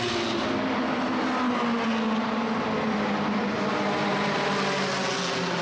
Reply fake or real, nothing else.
real